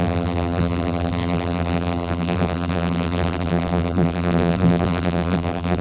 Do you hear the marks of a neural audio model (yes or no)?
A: yes